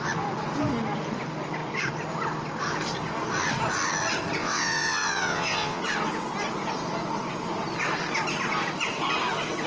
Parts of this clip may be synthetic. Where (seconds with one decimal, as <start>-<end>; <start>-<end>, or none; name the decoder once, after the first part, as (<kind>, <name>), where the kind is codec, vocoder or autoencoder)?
4.4-5.8 (vocoder, WaveNeXt)